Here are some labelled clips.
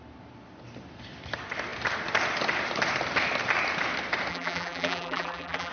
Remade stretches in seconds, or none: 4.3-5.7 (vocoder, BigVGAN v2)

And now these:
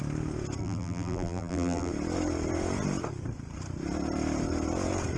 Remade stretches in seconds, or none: 0.6-1.9 (vocoder, BigVGAN v2)

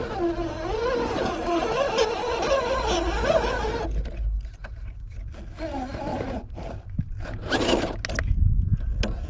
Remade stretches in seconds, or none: 6.1-7.6 (vocoder, BigVGAN v2)

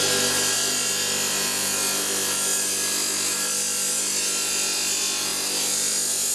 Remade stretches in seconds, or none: 5.3-6.3 (vocoder, BigVGAN v2)

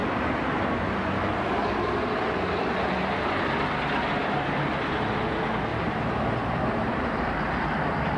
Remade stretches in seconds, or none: 5.7-7.1 (vocoder, BigVGAN v2)

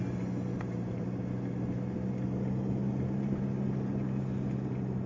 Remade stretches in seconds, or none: 0.5-1.2 (vocoder, BigVGAN v2); 2.9-3.4

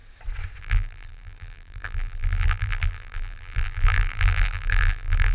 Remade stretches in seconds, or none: 0.6-5.3 (vocoder, BigVGAN v2)

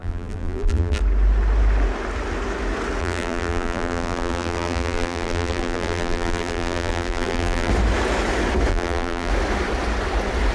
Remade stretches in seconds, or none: 0.0-1.0 (vocoder, BigVGAN v2); 3.0-7.7; 8.7-9.3